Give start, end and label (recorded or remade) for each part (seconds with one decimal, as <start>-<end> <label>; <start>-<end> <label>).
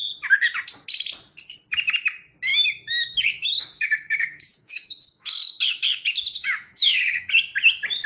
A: 0.0-2.5 recorded; 2.5-7.3 remade; 7.3-8.1 recorded